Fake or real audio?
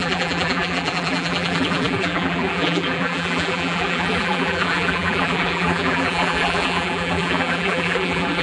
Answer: fake